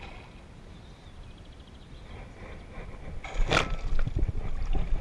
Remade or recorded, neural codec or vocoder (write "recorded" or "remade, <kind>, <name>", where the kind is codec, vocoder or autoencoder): recorded